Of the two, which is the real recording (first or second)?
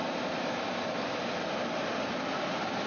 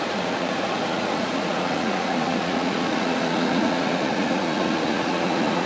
first